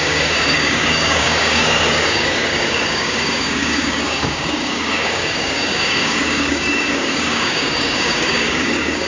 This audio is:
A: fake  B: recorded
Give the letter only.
A